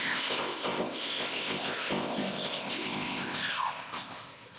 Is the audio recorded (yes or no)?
no